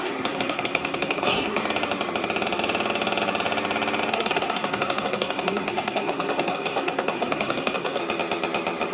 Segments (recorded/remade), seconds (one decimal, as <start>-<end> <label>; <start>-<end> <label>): 0.0-1.6 remade; 1.6-4.1 recorded; 4.1-8.0 remade; 8.0-8.9 recorded